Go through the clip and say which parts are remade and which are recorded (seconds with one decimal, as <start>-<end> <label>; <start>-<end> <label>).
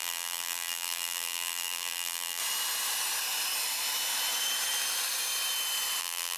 0.0-2.4 remade; 2.4-6.0 recorded; 6.0-6.4 remade